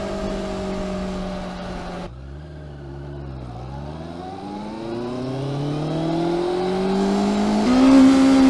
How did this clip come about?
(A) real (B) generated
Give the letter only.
A